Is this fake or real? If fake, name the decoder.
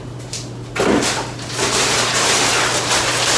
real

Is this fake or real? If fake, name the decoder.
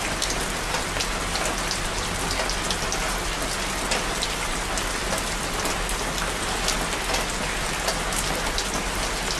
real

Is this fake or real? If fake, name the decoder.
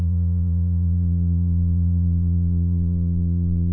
fake, vocoder, Vocos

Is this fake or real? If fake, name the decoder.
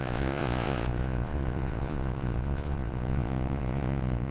fake, vocoder, Vocos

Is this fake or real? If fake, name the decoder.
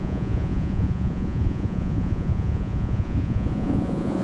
fake, vocoder, Vocos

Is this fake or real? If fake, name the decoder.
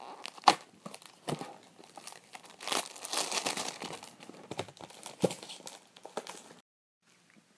real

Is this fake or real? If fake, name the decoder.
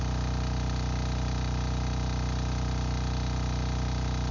real